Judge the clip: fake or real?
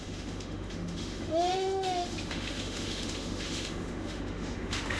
fake